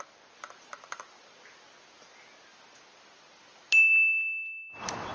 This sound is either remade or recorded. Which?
recorded